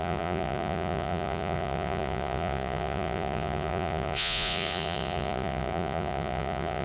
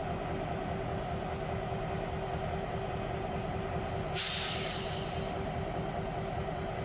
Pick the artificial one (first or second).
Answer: first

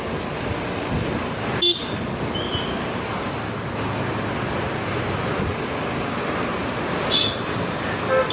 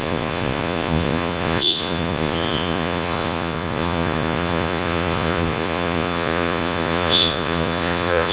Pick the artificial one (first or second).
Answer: second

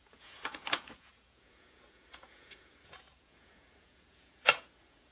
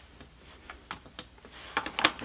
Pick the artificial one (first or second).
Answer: first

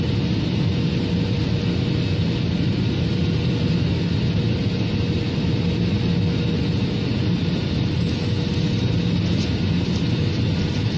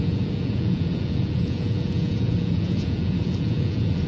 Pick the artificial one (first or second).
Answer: second